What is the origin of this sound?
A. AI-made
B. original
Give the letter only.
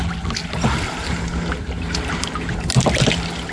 B